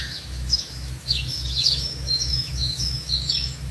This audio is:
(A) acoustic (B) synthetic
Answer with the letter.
B